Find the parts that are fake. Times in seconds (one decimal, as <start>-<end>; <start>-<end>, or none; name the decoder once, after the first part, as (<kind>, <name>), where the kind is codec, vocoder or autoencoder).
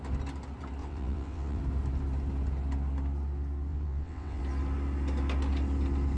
0.8-1.6 (vocoder, WaveNeXt); 3.7-4.4